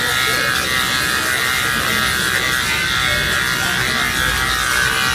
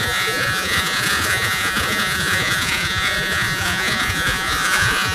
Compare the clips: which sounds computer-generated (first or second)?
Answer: second